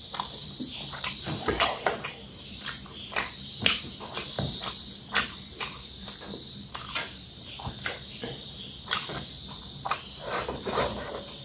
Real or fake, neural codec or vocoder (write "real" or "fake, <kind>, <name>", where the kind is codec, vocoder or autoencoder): fake, vocoder, BigVGAN v2